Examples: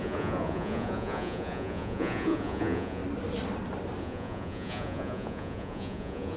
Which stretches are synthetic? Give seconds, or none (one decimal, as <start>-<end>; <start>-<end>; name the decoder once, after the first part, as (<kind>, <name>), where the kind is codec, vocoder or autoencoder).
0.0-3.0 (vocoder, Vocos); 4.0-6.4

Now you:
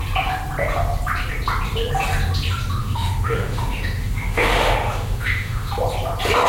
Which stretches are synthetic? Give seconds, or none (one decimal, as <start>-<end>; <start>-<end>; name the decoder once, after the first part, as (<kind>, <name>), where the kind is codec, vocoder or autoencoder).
2.8-5.7 (autoencoder, DAC-VAE)

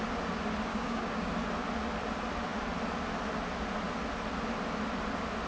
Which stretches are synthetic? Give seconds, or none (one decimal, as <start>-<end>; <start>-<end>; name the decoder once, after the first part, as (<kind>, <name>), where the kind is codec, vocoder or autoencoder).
0.7-1.3 (codec, DAC)

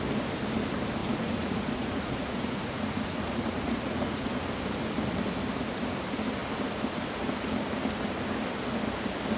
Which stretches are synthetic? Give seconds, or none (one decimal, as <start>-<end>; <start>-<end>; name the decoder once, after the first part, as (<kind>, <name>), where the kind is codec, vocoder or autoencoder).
1.0-4.3 (vocoder, Vocos)

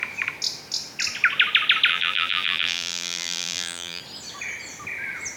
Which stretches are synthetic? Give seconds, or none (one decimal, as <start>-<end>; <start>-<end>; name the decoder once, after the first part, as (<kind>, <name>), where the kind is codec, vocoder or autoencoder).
1.9-4.0 (vocoder, BigVGAN v2)

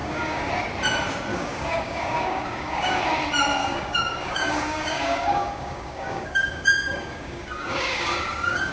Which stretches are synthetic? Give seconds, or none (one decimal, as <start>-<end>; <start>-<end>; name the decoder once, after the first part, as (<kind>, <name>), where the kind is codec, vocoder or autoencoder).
0.0-0.5 (codec, DAC); 1.3-3.0; 3.6-8.7